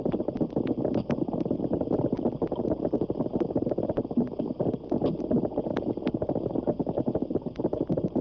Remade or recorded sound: recorded